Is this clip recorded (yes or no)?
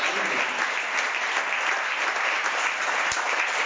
yes